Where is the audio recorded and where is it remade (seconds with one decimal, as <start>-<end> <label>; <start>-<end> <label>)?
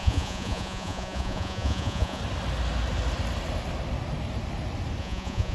0.0-2.2 remade; 2.2-5.0 recorded; 5.0-5.5 remade